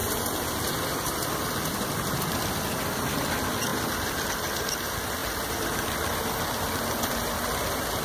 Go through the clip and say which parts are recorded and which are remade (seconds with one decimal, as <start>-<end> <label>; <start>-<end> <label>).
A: 0.0-8.0 recorded